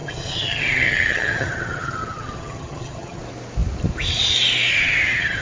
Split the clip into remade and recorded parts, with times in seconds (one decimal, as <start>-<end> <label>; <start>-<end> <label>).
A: 0.0-3.2 remade; 3.2-4.7 recorded; 4.7-5.4 remade